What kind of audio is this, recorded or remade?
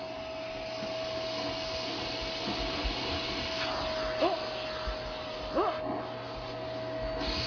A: recorded